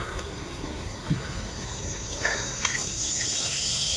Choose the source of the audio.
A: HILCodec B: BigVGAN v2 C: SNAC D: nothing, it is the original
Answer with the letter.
C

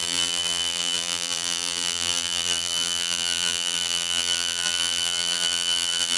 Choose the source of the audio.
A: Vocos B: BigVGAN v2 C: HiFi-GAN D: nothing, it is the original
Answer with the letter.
B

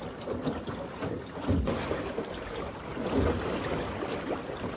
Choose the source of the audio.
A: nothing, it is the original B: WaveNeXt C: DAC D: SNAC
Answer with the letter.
A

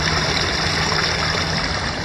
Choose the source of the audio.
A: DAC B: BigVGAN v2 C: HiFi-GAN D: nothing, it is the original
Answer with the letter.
B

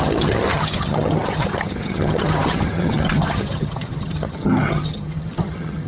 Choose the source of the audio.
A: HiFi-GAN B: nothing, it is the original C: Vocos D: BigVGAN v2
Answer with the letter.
A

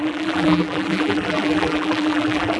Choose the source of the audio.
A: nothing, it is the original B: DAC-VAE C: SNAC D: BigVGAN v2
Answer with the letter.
D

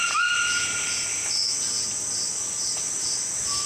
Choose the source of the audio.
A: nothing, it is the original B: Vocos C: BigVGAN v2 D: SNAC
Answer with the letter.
A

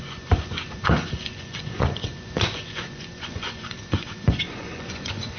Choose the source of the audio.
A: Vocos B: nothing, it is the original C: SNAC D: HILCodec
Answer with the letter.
A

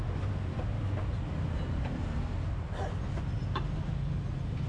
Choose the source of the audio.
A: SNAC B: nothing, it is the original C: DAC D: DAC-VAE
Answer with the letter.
B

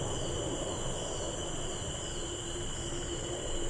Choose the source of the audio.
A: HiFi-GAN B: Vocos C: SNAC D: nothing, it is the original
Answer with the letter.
D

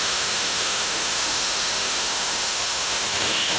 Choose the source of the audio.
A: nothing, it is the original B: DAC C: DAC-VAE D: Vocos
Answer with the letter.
C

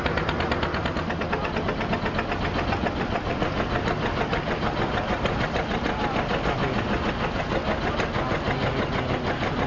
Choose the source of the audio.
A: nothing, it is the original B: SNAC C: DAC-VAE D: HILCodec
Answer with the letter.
A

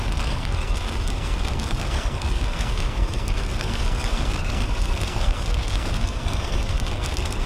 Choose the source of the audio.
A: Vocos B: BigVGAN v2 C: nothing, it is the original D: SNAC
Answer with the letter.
D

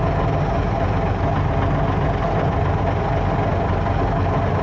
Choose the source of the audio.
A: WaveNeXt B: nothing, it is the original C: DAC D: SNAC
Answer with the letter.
B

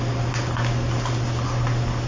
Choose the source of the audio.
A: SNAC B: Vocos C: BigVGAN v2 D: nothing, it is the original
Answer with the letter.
D